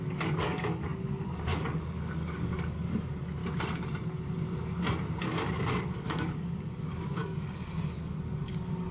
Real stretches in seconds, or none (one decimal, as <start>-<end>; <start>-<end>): 3.4-5.2